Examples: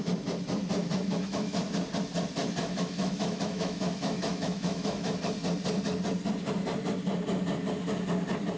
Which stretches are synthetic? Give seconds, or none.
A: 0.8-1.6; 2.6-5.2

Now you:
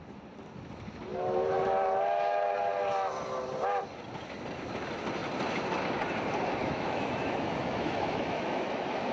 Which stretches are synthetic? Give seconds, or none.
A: 6.6-9.1